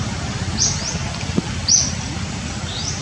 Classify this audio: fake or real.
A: real